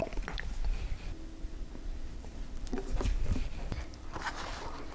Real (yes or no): no